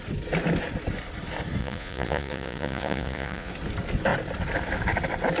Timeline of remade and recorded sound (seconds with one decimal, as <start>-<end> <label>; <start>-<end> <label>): 0.0-1.6 recorded; 1.6-3.5 remade; 3.5-5.4 recorded

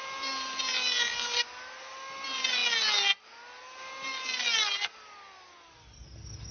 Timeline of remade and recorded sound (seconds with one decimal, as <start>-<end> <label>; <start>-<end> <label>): 0.0-6.5 recorded

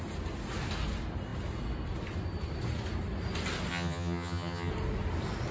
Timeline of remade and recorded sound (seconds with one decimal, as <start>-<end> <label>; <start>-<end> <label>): 0.0-3.7 recorded; 3.7-4.7 remade; 4.7-5.5 recorded